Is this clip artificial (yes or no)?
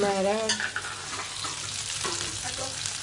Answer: no